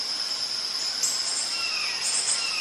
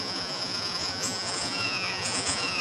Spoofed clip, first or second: second